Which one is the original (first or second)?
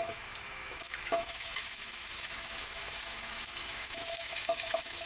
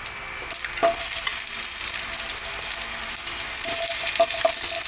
second